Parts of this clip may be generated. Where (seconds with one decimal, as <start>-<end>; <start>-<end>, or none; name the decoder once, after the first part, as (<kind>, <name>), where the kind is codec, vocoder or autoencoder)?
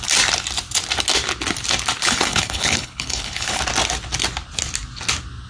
2.0-3.6 (codec, HILCodec)